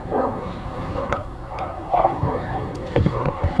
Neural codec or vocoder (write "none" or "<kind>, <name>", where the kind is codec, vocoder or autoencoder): codec, SNAC